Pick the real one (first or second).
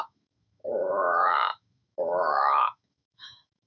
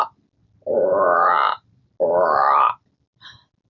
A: second